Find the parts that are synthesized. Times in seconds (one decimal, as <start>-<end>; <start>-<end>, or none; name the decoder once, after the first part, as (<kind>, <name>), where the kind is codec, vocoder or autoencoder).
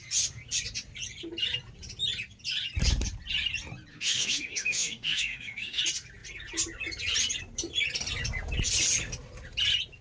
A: 3.9-5.8 (autoencoder, DAC-VAE)